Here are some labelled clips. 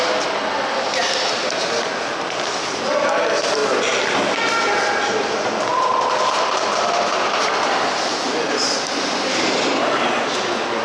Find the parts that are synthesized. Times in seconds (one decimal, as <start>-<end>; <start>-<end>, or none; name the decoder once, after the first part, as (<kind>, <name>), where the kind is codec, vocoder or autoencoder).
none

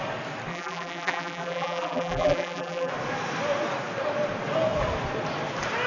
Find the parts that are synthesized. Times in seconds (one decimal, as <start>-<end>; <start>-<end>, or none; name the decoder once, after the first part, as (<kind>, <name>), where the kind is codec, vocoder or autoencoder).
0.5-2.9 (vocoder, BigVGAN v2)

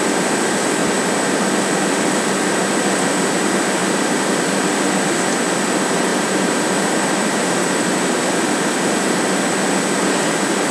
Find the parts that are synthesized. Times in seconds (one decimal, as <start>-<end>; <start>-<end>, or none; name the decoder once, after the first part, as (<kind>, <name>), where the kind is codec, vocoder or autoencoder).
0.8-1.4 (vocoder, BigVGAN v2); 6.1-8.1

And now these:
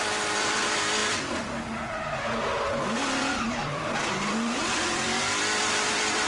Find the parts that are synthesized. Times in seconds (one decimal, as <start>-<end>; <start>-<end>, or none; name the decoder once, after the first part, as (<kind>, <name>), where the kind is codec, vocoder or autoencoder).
0.0-2.5 (vocoder, BigVGAN v2); 3.1-6.3

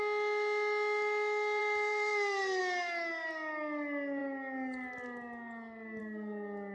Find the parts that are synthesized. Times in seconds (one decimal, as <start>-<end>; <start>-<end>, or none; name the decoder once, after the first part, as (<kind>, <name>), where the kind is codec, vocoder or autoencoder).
1.6-2.6 (vocoder, BigVGAN v2)